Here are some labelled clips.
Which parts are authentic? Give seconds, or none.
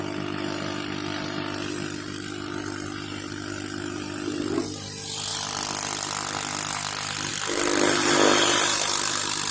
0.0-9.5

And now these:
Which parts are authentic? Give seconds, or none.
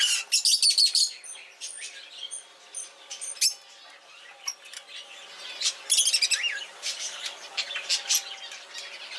0.0-6.5; 7.5-9.2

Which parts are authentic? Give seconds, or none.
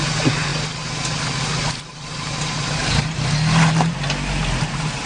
0.0-1.9; 3.2-5.1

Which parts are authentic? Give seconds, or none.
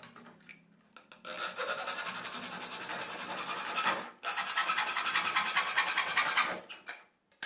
0.0-7.5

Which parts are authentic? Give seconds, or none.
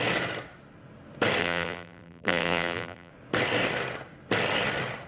0.0-1.4; 3.1-5.1